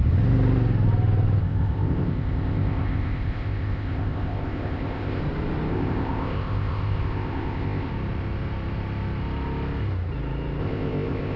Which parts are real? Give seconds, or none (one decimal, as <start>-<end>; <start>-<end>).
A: 0.0-1.4; 5.2-5.7; 7.9-10.6